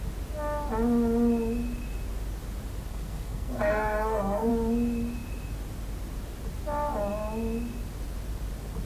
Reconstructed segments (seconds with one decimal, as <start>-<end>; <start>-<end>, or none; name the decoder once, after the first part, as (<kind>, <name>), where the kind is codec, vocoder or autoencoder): 2.9-4.5 (codec, SNAC)